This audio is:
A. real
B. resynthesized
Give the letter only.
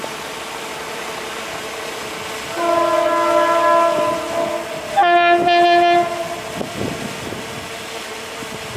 A